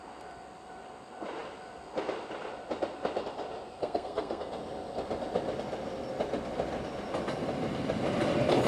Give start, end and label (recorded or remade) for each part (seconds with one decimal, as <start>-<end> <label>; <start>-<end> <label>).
0.0-3.8 recorded; 3.8-4.5 remade; 4.5-8.7 recorded